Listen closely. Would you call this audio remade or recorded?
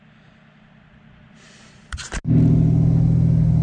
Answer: recorded